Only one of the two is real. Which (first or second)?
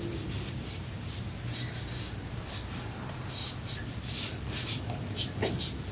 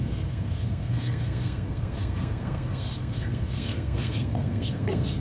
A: first